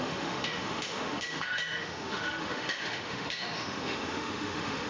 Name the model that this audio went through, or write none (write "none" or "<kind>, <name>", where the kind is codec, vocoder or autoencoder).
autoencoder, DAC-VAE